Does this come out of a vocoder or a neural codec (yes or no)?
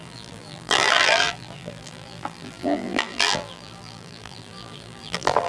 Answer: yes